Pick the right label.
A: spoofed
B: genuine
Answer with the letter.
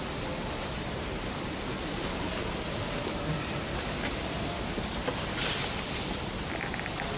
B